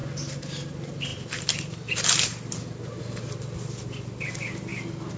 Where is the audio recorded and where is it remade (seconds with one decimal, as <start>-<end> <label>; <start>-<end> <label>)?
0.0-0.7 recorded; 0.7-4.7 remade; 4.7-5.2 recorded